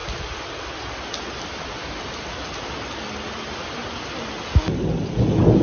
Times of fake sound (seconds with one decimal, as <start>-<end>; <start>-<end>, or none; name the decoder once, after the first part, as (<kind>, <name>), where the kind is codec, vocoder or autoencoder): none